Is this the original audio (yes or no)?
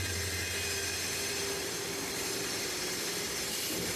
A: yes